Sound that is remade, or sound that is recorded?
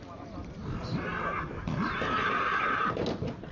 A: recorded